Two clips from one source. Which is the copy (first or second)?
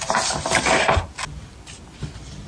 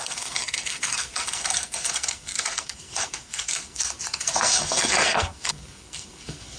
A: second